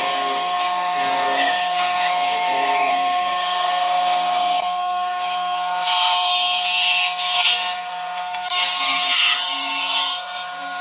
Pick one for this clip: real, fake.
fake